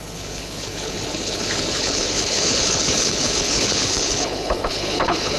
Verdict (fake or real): fake